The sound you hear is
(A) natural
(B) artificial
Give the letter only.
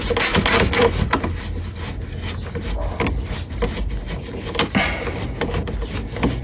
A